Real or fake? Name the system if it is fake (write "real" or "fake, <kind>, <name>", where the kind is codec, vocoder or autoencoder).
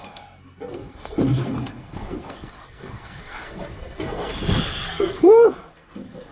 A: fake, codec, SNAC